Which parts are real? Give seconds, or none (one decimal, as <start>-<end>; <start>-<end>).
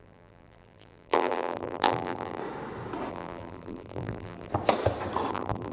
2.4-3.1; 4.5-5.3